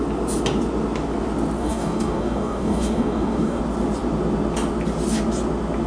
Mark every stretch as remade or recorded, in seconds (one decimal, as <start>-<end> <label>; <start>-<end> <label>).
0.0-1.6 recorded; 1.6-3.6 remade; 3.6-5.9 recorded